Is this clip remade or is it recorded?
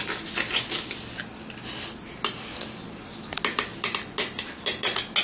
recorded